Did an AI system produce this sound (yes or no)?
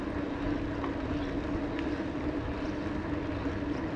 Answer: no